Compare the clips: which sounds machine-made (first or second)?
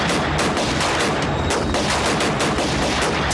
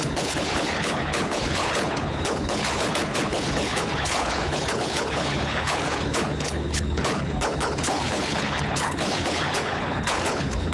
second